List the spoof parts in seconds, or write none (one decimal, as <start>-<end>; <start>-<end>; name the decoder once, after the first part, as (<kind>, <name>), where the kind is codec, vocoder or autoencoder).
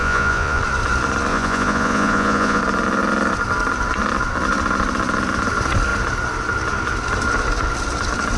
0.0-0.6 (vocoder, Vocos); 1.3-2.6